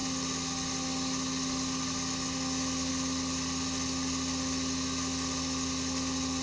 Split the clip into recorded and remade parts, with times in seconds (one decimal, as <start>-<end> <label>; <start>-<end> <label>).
0.0-6.4 recorded